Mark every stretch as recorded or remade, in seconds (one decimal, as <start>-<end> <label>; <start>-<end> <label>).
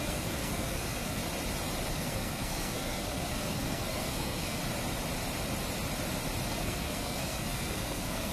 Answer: 0.0-1.2 remade; 1.2-1.9 recorded; 1.9-4.6 remade; 4.6-6.5 recorded; 6.5-8.3 remade